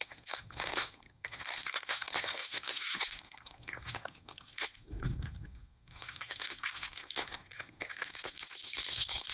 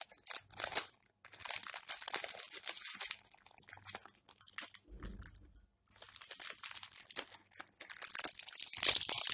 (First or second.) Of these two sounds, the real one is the second